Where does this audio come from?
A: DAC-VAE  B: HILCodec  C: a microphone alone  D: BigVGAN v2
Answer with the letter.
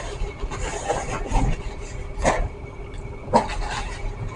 C